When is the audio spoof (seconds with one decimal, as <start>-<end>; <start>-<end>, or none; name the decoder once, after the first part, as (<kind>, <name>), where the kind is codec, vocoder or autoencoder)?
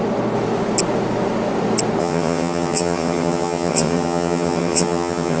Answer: 2.0-5.4 (vocoder, HiFi-GAN)